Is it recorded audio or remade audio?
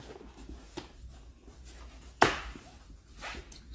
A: recorded